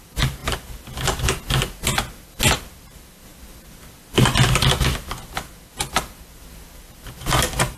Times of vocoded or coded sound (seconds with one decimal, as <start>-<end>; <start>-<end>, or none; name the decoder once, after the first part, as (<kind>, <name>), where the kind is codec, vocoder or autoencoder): none